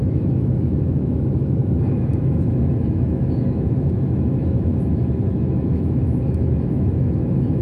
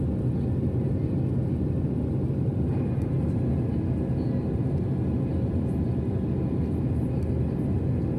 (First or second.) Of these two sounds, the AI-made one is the first